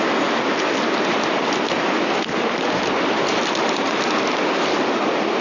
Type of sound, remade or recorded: recorded